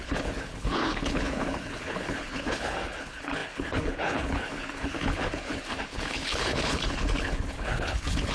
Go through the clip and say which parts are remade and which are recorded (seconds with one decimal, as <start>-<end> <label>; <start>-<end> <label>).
0.0-8.3 remade